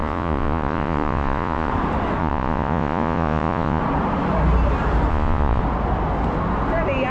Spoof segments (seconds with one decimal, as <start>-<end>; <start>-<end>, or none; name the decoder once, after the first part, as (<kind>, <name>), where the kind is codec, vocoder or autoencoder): 0.0-1.7 (vocoder, Vocos); 2.2-3.8; 5.1-5.6